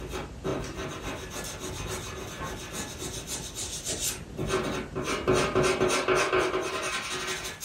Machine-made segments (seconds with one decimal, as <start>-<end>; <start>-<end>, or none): none